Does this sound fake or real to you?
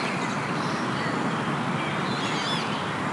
real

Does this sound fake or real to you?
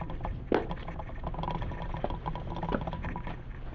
real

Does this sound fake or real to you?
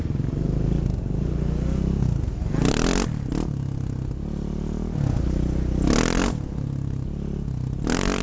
real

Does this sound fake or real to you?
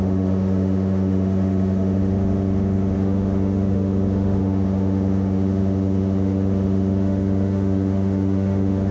fake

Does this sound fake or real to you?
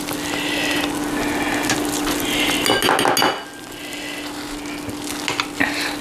real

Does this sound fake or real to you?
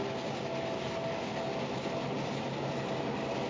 real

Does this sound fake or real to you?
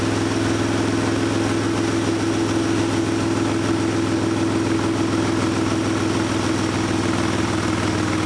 real